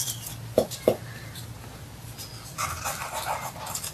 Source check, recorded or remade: recorded